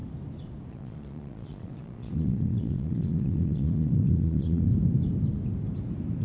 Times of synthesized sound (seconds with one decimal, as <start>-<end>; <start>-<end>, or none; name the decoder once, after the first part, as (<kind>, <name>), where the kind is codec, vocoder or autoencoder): 0.7-4.7 (vocoder, Vocos)